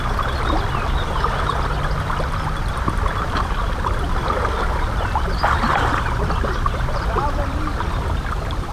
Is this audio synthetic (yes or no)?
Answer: no